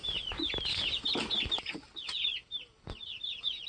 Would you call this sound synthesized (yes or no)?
yes